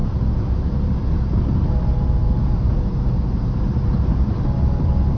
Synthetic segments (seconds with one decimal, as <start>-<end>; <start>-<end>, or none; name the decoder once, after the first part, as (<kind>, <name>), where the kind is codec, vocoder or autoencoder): 0.0-1.4 (vocoder, BigVGAN v2); 2.2-4.3